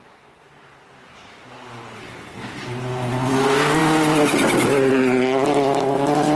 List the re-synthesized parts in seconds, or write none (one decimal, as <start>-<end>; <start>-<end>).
none